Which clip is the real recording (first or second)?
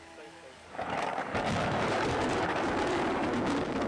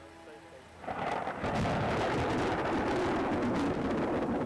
second